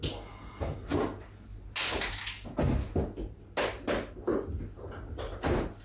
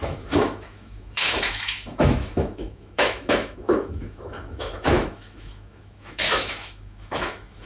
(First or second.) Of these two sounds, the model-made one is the second